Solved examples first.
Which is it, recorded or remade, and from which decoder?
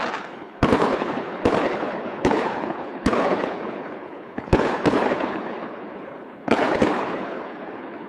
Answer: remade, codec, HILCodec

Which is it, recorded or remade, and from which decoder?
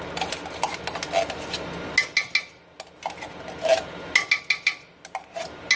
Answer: recorded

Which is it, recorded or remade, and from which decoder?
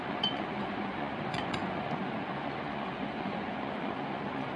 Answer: remade, vocoder, Vocos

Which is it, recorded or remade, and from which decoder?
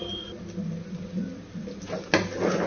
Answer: recorded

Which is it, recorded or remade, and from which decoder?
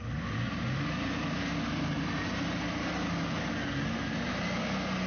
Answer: recorded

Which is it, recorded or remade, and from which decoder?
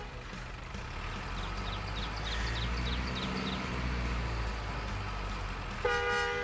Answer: recorded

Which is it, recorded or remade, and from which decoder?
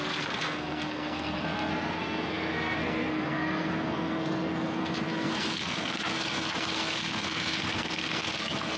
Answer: remade, codec, SNAC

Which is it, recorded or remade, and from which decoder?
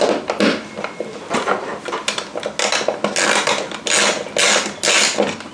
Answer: recorded